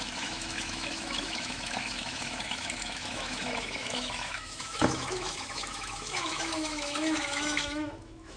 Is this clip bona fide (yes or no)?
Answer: no